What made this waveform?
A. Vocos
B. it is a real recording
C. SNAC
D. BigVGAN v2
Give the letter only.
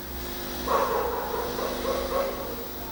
B